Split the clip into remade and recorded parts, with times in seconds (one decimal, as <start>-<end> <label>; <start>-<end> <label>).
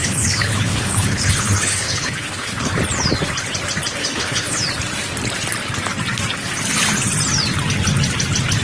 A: 0.0-2.8 remade; 2.8-4.0 recorded; 4.0-4.6 remade; 4.6-8.6 recorded